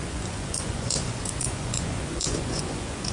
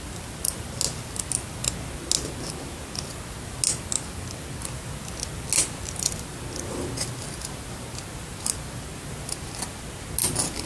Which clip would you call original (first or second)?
second